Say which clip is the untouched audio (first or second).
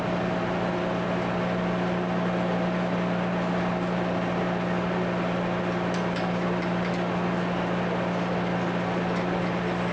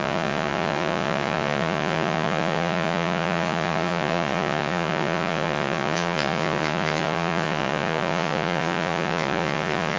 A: first